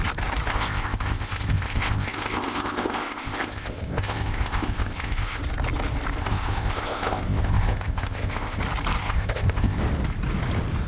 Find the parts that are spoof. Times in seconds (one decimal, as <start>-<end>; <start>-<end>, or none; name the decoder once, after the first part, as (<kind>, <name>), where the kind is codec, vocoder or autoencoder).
0.5-5.4 (codec, ZipCodec); 6.2-8.6; 9.0-9.8